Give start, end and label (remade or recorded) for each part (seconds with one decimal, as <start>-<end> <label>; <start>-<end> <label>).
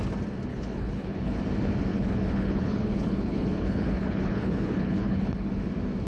0.0-0.5 recorded; 0.5-1.4 remade; 1.4-1.9 recorded; 1.9-5.6 remade; 5.6-6.1 recorded